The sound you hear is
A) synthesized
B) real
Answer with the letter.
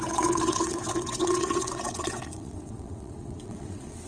A